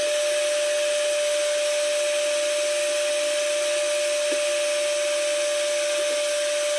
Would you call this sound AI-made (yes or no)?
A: no